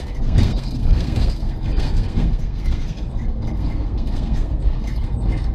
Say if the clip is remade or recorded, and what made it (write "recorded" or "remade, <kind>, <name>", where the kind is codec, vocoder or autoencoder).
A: remade, codec, SNAC